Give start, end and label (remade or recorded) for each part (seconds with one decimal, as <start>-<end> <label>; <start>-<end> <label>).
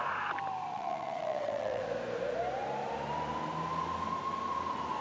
0.0-0.7 recorded; 0.7-1.8 remade; 1.8-5.0 recorded